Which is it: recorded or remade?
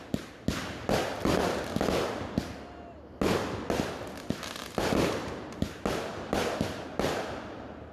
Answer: recorded